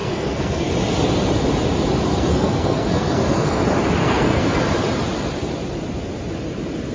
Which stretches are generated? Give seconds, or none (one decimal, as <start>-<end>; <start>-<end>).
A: 0.0-0.7; 2.1-3.6; 4.0-4.6